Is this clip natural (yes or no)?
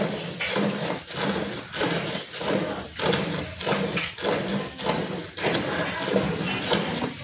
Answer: yes